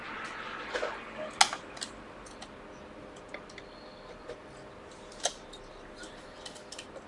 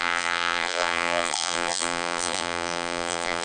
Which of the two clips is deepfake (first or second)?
second